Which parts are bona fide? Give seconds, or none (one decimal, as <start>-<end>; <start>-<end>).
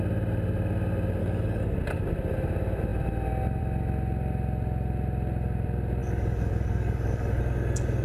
0.0-1.2; 1.8-6.0; 7.4-8.0